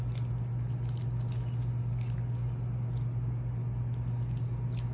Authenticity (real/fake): real